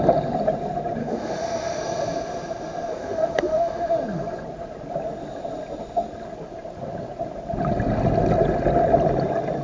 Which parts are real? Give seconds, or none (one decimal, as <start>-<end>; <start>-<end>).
0.0-1.0; 1.8-2.9; 3.9-9.6